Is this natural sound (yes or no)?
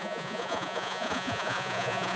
no